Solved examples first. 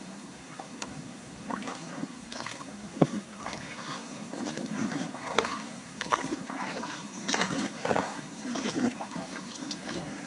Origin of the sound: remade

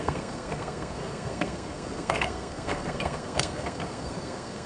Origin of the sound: remade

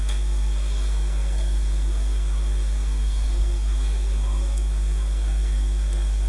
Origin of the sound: remade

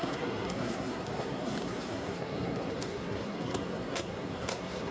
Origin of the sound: remade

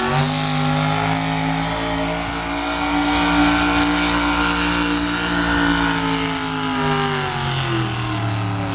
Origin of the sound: recorded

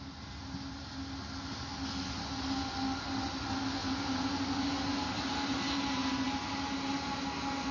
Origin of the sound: recorded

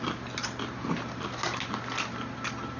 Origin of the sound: recorded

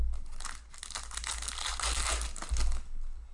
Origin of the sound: recorded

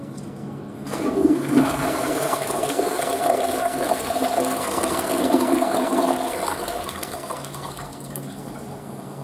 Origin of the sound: remade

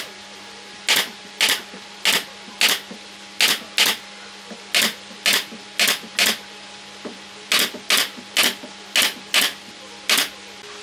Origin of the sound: recorded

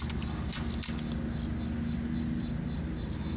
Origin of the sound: recorded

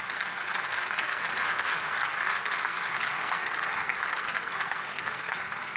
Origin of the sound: remade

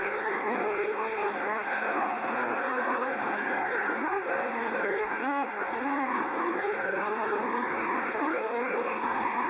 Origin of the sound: remade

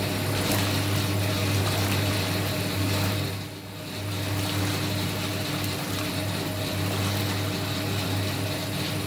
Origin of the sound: recorded